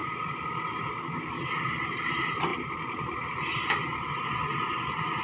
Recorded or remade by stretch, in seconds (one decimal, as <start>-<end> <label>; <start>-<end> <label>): 0.0-1.2 remade; 1.2-5.2 recorded